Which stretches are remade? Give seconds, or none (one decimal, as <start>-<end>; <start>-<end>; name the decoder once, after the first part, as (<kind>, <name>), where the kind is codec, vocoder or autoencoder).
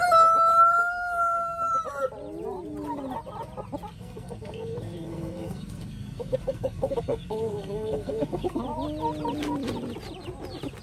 0.8-1.7 (codec, SNAC); 3.9-8.6